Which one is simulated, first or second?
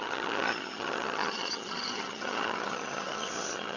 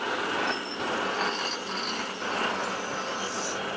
first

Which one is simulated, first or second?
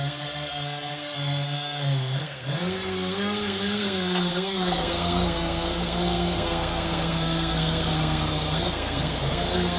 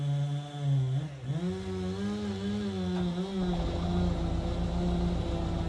first